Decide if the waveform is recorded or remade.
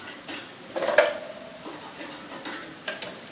recorded